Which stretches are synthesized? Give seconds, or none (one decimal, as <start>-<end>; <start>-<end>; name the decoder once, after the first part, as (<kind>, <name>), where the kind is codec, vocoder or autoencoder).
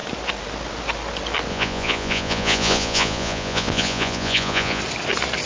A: 1.5-4.8 (vocoder, Vocos)